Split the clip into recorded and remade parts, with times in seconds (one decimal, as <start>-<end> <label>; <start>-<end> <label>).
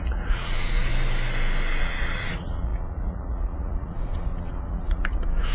0.0-0.9 remade; 0.9-1.8 recorded; 1.8-5.5 remade